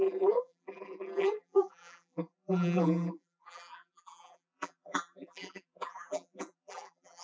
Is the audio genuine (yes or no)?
no